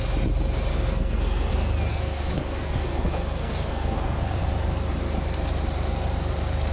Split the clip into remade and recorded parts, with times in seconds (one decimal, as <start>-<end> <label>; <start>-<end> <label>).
0.0-0.7 recorded; 0.7-1.5 remade; 1.5-1.9 recorded; 1.9-4.4 remade; 4.4-6.7 recorded